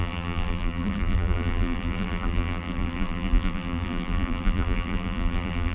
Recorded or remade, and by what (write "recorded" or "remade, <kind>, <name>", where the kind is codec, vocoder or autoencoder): remade, vocoder, BigVGAN v2